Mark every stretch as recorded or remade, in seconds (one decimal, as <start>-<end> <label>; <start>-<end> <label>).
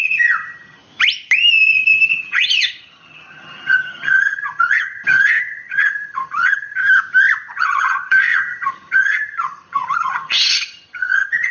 0.0-0.8 remade; 0.8-2.1 recorded; 2.1-6.8 remade; 6.8-7.5 recorded; 7.5-11.5 remade